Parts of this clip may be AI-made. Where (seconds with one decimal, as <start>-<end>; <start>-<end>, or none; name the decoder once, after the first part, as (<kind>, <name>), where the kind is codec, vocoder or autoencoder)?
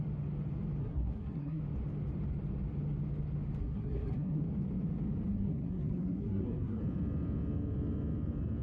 0.8-1.6 (codec, SNAC); 3.6-4.4; 5.3-6.8